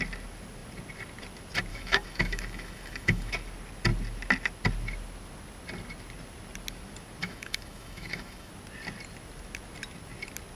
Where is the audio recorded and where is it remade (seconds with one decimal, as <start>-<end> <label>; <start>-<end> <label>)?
0.0-1.7 recorded; 1.7-3.3 remade; 3.3-7.2 recorded; 7.2-8.5 remade; 8.5-10.5 recorded